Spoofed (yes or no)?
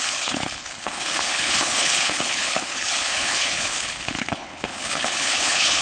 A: yes